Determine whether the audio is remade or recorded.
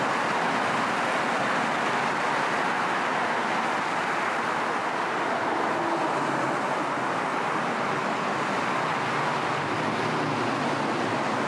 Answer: recorded